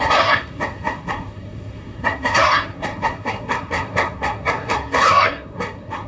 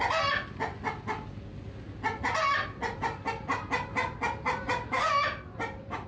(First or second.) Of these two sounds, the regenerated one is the first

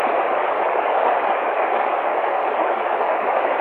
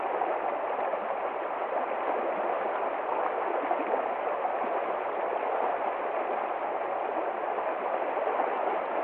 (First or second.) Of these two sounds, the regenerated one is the first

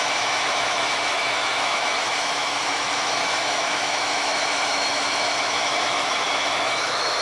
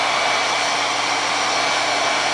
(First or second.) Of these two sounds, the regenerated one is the first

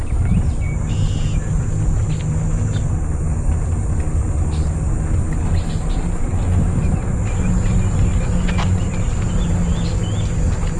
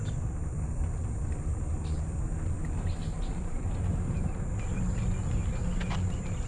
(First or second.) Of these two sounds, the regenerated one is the second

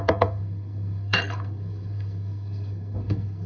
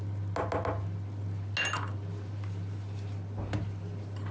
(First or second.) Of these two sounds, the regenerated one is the first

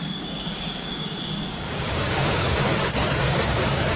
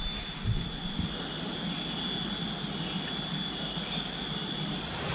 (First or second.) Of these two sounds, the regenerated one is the first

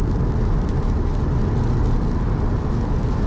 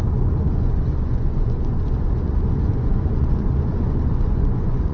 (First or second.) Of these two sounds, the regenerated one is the second